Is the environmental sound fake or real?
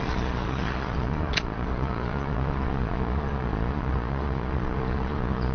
fake